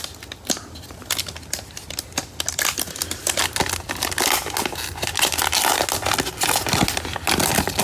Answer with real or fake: real